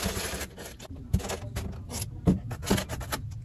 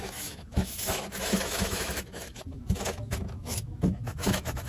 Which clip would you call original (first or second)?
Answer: first